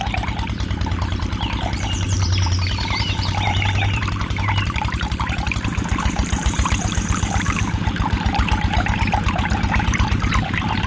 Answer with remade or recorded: remade